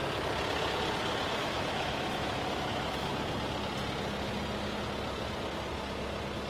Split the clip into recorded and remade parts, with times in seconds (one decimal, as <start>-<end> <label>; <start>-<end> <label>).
0.0-1.4 recorded; 1.4-3.1 remade; 3.1-6.5 recorded